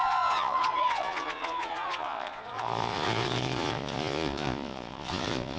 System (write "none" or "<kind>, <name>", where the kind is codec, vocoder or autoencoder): vocoder, Vocos